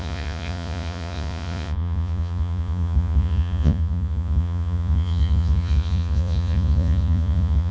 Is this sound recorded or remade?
remade